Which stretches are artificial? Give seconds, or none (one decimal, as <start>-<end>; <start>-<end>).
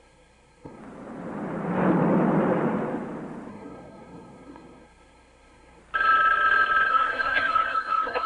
0.0-0.8; 3.5-5.8; 6.9-8.3